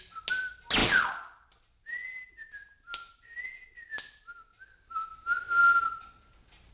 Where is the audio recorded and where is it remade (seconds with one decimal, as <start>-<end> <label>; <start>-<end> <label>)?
0.0-6.7 recorded